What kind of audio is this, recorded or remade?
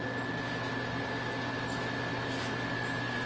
recorded